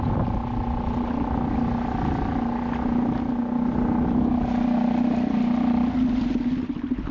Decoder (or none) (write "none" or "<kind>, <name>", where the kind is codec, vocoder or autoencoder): none